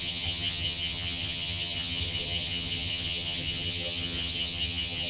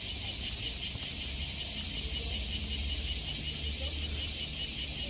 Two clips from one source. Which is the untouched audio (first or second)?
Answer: second